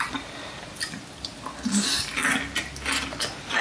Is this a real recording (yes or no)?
yes